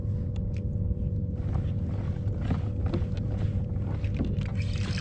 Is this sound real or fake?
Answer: real